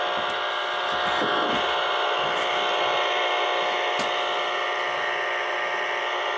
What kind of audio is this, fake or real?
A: real